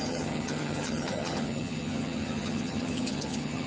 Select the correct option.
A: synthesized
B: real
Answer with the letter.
A